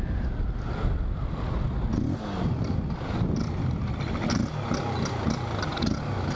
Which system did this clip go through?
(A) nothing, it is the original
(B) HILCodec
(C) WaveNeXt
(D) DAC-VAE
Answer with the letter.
A